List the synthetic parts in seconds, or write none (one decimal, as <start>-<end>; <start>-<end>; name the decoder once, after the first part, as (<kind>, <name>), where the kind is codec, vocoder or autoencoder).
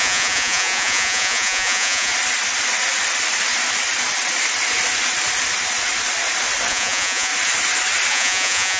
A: 0.0-2.1 (vocoder, Vocos); 6.7-7.3; 8.1-8.8